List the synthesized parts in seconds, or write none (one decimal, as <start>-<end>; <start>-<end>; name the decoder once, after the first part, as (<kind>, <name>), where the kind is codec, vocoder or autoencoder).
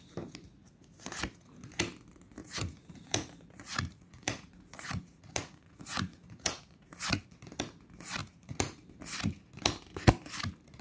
2.4-7.2 (vocoder, Vocos); 8.2-8.8